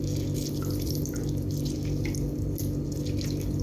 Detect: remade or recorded recorded